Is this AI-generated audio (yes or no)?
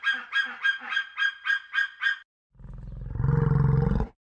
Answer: no